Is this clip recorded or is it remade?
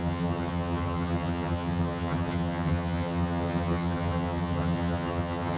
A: remade